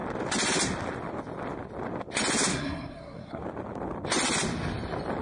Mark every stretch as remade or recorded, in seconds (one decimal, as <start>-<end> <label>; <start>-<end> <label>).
0.0-2.5 recorded; 2.5-3.4 remade; 3.4-5.2 recorded